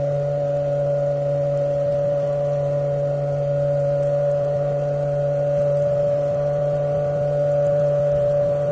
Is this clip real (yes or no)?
yes